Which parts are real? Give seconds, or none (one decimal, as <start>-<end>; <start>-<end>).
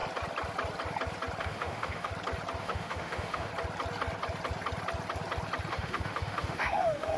0.0-1.4; 2.1-2.6; 3.5-5.7